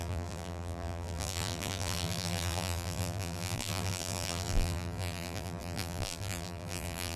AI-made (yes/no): yes